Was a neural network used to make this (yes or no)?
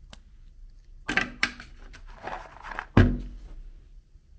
no